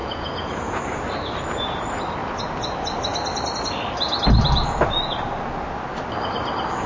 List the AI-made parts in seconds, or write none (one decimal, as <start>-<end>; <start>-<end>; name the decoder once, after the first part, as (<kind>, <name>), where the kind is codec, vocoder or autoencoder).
0.0-0.8 (vocoder, Vocos)